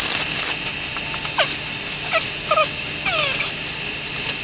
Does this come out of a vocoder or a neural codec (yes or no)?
no